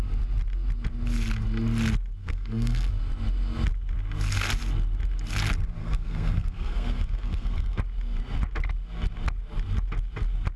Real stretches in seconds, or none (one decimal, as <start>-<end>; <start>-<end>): 0.0-2.2; 2.9-5.8; 7.8-10.6